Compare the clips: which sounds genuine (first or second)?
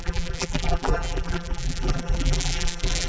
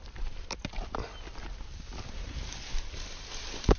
second